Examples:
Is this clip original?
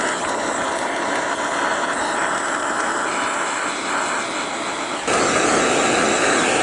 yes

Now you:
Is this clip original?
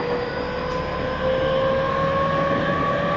yes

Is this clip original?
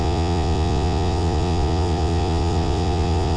no